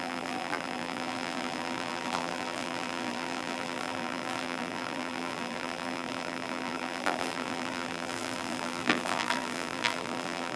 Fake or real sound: fake